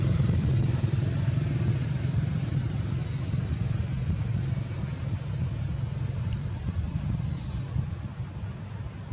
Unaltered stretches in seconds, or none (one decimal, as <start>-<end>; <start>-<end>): 3.0-6.2